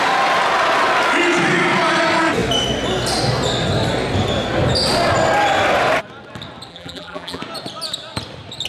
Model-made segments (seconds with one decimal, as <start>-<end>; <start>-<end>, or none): 6.7-7.4